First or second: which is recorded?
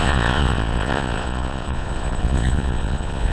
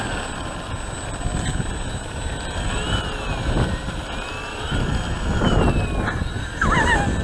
second